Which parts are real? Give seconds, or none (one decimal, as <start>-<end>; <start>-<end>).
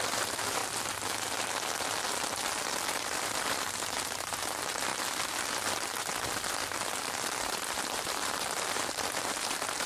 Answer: 0.6-3.0; 4.9-7.9